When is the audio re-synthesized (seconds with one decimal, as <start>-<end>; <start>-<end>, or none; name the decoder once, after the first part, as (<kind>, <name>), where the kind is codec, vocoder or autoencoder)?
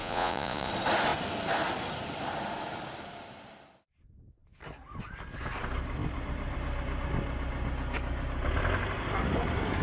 0.0-0.7 (vocoder, Vocos)